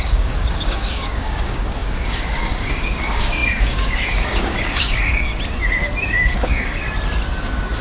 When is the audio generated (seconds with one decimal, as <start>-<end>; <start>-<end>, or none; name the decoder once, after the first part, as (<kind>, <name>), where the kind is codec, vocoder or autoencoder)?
0.0-5.3 (codec, DAC); 6.1-6.8